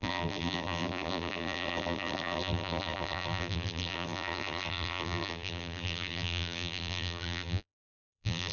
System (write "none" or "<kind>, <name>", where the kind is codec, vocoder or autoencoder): vocoder, BigVGAN v2